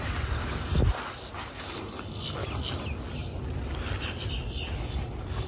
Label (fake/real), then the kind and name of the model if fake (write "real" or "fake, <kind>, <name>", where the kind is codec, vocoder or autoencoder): real